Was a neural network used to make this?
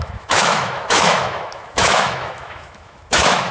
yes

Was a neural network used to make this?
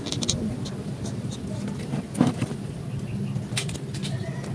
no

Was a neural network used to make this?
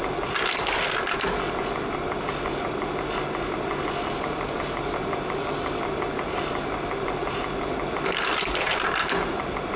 no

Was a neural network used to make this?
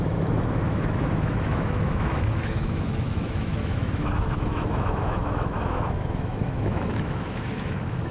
yes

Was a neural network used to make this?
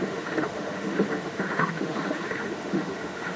yes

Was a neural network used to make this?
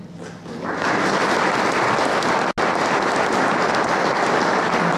no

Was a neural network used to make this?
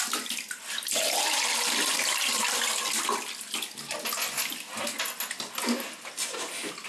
no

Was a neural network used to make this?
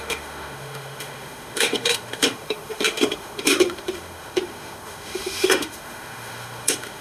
yes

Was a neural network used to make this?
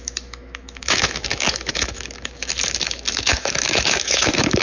yes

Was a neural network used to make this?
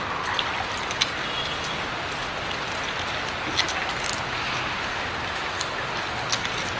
no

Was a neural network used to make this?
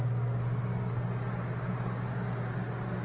no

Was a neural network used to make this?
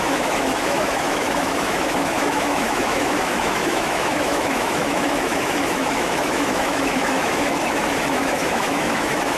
yes